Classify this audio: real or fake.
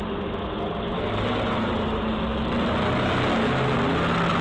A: real